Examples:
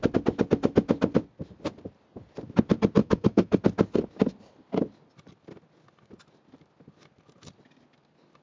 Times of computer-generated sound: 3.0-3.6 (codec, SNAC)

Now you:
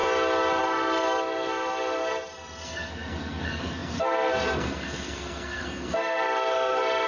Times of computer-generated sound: 0.6-7.1 (codec, SNAC)

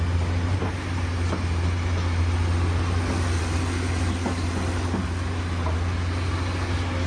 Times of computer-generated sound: none

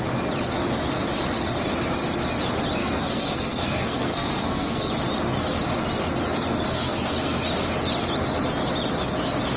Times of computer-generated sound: 2.8-4.9 (codec, SNAC); 6.7-7.4

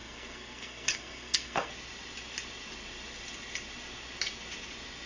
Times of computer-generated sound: 0.0-1.7 (codec, SNAC)